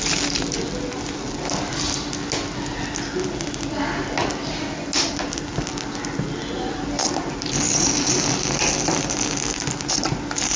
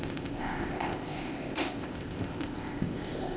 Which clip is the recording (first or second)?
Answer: first